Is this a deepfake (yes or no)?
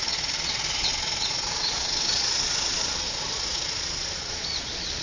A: yes